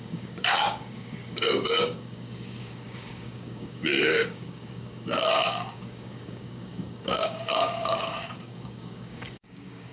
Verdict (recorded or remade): remade